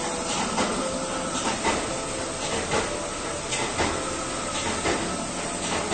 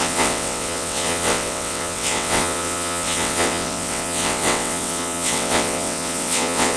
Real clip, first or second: first